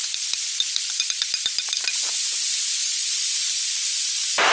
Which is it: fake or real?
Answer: real